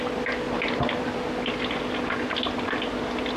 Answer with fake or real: real